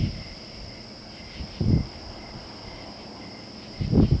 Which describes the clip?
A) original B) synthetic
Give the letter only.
A